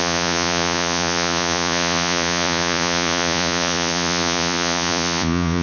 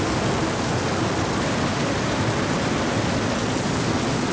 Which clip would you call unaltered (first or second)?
second